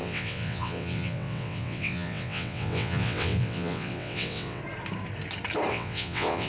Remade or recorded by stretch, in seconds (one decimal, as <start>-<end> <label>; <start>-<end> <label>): 0.0-4.6 remade; 4.6-5.7 recorded; 5.7-6.5 remade

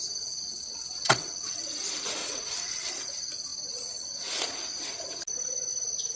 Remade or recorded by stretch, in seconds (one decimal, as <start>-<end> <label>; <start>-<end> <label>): 0.0-0.5 recorded; 0.5-1.6 remade; 1.6-2.2 recorded; 2.2-2.9 remade; 2.9-6.2 recorded

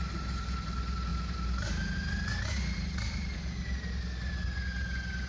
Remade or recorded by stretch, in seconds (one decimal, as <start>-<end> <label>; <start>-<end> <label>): 0.0-5.3 recorded

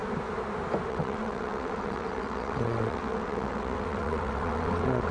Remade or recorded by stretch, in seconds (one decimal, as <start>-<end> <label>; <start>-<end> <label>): 0.0-0.9 recorded; 0.9-5.1 remade

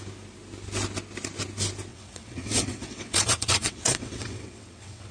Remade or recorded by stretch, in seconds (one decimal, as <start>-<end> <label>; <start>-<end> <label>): 0.0-1.9 recorded; 1.9-5.1 remade

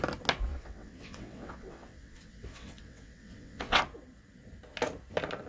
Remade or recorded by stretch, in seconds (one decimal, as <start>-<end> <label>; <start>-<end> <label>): 0.0-0.5 recorded; 0.5-3.8 remade; 3.8-5.5 recorded

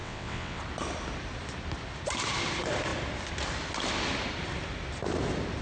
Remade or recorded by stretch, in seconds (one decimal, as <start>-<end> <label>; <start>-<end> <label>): 0.0-0.6 remade; 0.6-5.6 recorded